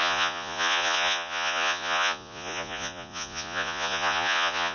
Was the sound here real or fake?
fake